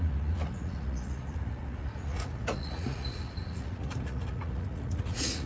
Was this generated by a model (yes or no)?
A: yes